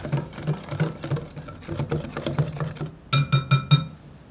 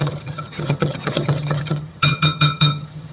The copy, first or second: second